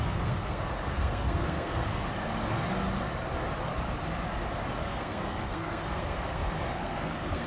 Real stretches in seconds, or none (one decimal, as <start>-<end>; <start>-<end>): 2.0-4.7